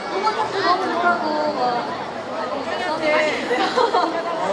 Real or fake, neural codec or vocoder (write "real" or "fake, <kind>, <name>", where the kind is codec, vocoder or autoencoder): real